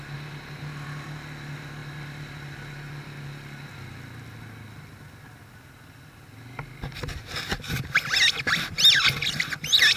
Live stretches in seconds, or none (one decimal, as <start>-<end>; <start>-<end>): 0.0-10.0